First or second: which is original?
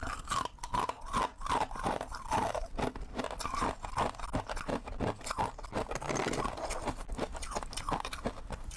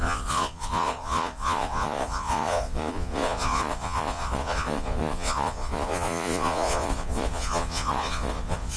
first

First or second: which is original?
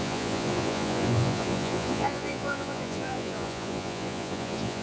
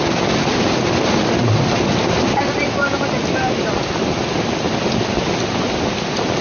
second